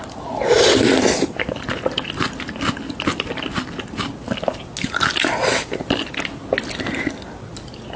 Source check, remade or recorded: recorded